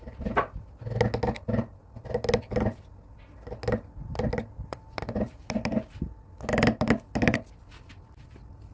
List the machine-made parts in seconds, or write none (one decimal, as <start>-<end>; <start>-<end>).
none

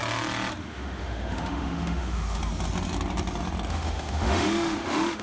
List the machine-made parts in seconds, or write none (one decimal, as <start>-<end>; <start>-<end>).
0.6-2.4; 3.7-5.2